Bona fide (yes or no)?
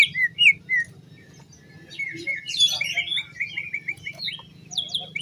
yes